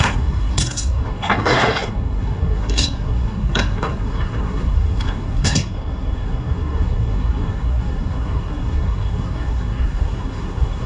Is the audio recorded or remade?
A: remade